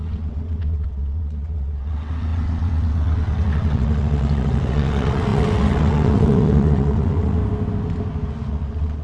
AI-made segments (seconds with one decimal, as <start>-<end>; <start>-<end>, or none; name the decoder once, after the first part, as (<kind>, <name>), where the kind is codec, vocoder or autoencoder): 0.0-7.4 (vocoder, WaveNeXt); 8.5-9.0